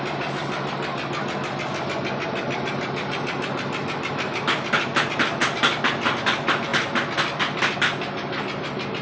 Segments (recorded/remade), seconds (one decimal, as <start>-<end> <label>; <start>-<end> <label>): 0.0-9.0 recorded